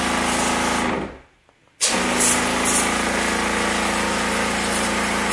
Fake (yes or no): no